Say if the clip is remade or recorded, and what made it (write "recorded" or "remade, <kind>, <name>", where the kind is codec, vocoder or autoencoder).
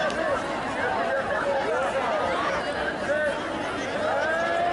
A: recorded